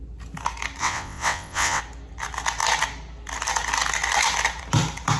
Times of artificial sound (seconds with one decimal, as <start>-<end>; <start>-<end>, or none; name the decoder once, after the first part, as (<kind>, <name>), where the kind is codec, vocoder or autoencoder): 0.8-1.8 (vocoder, WaveNeXt)